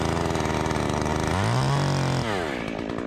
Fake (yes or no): no